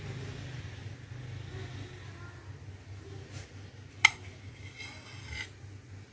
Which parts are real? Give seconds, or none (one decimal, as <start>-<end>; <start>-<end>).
0.0-6.1